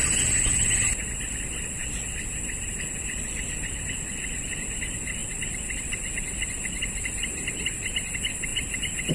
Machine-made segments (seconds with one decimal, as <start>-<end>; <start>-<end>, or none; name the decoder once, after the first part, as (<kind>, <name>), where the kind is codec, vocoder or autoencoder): none